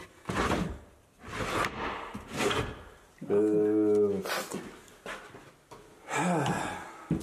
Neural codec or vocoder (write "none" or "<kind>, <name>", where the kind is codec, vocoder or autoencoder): none